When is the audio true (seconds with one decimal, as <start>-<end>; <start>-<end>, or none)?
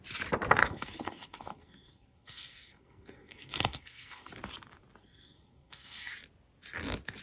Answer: 0.0-0.6; 4.3-5.0; 6.1-7.2